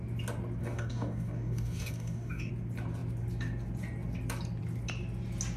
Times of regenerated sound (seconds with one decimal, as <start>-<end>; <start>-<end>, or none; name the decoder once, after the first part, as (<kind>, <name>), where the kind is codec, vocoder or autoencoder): 0.6-2.5 (codec, DAC)